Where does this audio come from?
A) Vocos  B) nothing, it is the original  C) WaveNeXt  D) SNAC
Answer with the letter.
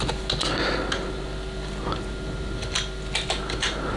B